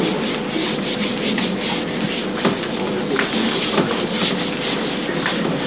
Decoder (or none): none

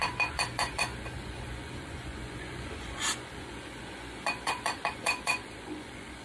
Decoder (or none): vocoder, Vocos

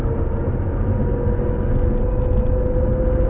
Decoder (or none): none